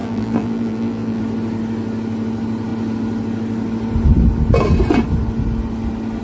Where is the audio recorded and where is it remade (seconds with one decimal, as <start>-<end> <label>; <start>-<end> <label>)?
0.0-1.2 remade; 1.2-6.2 recorded